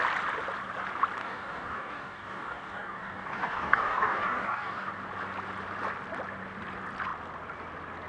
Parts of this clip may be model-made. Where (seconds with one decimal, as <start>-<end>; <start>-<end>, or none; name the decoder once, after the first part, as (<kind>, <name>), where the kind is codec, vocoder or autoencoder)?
1.2-4.9 (codec, DAC)